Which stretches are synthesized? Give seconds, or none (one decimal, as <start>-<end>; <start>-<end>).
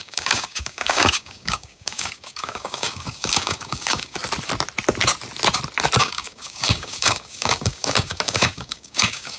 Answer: 0.0-4.2; 6.0-9.4